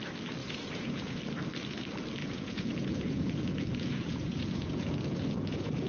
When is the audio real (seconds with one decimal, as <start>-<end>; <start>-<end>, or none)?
0.0-0.4; 1.2-2.2